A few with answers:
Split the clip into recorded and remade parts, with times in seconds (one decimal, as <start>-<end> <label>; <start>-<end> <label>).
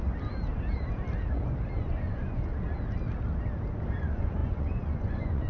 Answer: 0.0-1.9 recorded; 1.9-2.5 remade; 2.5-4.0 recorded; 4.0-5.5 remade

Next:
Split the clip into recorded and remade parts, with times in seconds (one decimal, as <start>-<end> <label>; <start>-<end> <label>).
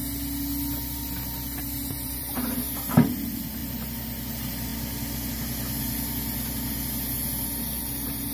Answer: 0.0-1.6 recorded; 1.6-3.6 remade; 3.6-4.3 recorded; 4.3-4.7 remade; 4.7-7.8 recorded; 7.8-8.3 remade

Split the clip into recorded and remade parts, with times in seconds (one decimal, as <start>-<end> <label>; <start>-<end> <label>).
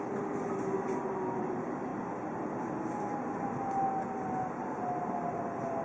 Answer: 0.0-5.8 recorded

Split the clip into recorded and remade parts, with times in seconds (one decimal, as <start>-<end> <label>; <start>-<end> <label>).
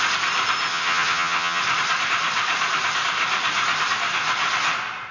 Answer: 0.0-0.7 recorded; 0.7-1.6 remade; 1.6-5.1 recorded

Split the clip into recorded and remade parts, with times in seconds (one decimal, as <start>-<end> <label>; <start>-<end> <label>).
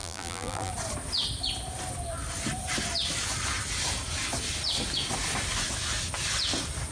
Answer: 0.0-0.7 remade; 0.7-6.9 recorded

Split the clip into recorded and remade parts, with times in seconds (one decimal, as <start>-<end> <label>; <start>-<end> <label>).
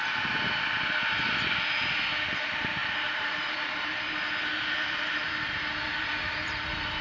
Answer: 0.0-2.2 recorded; 2.2-7.0 remade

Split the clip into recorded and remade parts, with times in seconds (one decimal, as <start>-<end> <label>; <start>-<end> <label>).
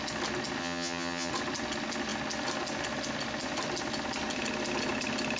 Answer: 0.0-0.6 recorded; 0.6-1.3 remade; 1.3-5.4 recorded